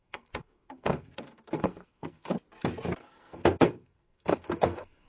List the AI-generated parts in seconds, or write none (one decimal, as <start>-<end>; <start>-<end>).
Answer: 0.0-2.3; 3.0-5.1